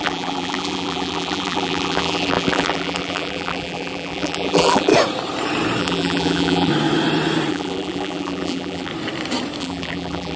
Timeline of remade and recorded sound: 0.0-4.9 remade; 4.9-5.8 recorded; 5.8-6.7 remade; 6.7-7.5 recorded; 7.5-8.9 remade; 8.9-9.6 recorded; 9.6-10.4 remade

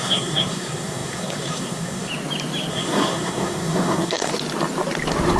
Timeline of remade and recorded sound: 0.0-2.1 remade; 2.1-2.7 recorded; 2.7-4.3 remade; 4.3-5.4 recorded

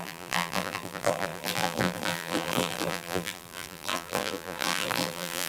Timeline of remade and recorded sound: 0.0-5.5 remade

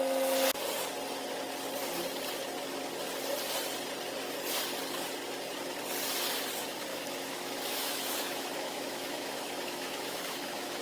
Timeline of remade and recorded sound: 0.0-6.9 recorded; 6.9-10.8 remade

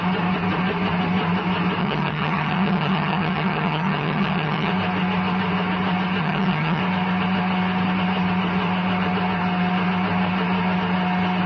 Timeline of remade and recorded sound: 0.0-1.8 recorded; 1.8-4.7 remade; 4.7-6.2 recorded; 6.2-6.8 remade; 6.8-11.5 recorded

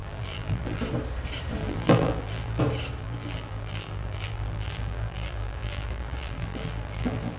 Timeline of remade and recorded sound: 0.0-0.8 remade; 0.8-1.6 recorded; 1.6-2.6 remade; 2.6-3.0 recorded; 3.0-7.4 remade

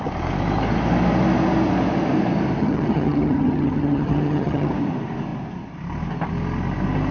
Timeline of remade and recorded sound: 0.0-2.6 recorded; 2.6-4.7 remade; 4.7-7.1 recorded